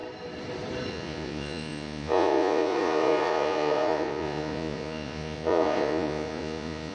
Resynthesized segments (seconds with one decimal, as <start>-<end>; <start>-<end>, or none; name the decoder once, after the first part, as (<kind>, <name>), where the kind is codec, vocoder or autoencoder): 0.9-6.9 (vocoder, Vocos)